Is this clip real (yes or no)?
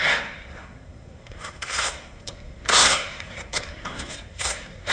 no